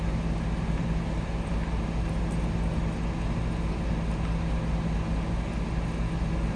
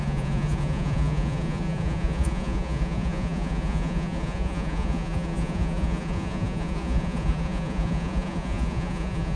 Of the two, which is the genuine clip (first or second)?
first